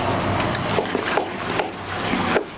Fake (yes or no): no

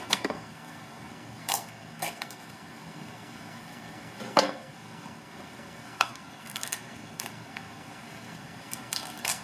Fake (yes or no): yes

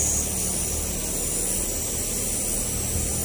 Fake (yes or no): no